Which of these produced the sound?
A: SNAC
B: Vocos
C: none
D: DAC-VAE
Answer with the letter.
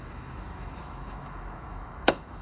D